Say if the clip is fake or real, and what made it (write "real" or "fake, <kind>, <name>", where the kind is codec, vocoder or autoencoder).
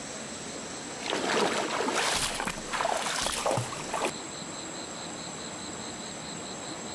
real